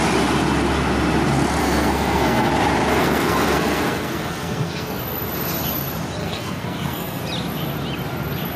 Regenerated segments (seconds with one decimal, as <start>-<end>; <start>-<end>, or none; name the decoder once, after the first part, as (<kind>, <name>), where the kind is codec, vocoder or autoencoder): 1.6-2.5 (codec, SNAC); 2.9-5.0; 6.2-7.2

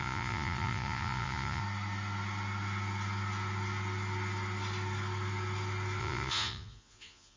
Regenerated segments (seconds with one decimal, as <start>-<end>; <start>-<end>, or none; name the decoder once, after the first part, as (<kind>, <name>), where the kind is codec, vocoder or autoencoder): 0.0-1.6 (vocoder, Vocos); 6.0-7.4

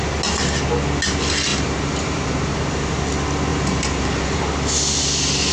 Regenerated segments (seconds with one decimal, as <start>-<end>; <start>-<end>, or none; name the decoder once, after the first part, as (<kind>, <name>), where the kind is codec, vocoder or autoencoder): 1.5-3.1 (vocoder, BigVGAN v2); 3.5-4.4